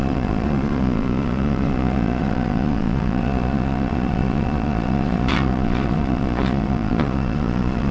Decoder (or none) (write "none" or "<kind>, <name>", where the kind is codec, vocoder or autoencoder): vocoder, Vocos